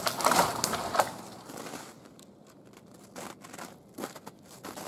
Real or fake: real